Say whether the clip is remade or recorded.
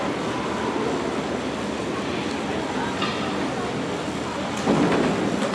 recorded